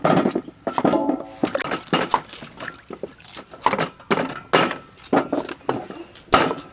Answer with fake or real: real